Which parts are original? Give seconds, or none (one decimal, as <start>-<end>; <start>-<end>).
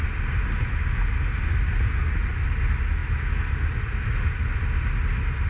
0.0-5.5